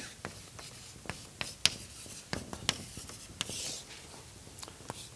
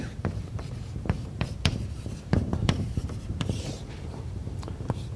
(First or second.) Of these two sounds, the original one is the first